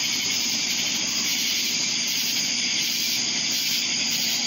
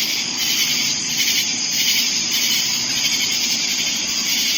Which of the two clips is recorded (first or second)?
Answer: first